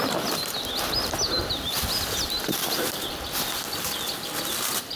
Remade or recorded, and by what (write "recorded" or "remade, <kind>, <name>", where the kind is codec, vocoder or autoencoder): recorded